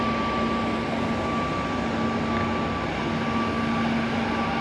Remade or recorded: recorded